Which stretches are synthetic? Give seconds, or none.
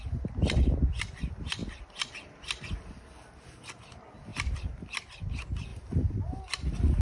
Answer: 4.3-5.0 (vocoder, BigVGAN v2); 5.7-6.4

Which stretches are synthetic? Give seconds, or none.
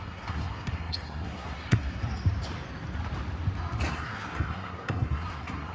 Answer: 0.0-2.0 (codec, SNAC); 3.9-5.7